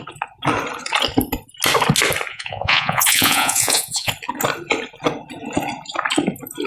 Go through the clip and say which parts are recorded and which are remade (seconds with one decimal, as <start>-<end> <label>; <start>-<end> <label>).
0.0-2.3 recorded; 2.3-4.1 remade; 4.1-6.7 recorded